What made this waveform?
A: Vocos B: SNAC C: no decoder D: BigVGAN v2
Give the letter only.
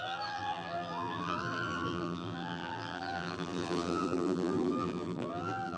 D